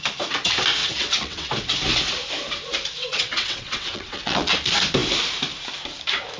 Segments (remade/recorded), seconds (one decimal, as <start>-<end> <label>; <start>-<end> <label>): 0.0-0.8 recorded; 0.8-1.5 remade; 1.5-3.0 recorded; 3.0-4.5 remade; 4.5-6.4 recorded